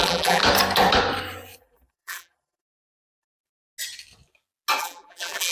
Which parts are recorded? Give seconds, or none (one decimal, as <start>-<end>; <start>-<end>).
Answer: 0.4-1.6; 3.4-4.8